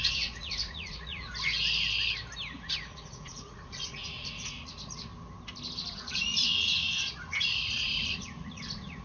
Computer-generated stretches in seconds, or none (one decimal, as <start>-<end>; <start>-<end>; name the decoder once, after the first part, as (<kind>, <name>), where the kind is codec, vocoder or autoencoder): 0.0-1.3 (vocoder, Vocos); 2.5-5.1; 5.9-9.0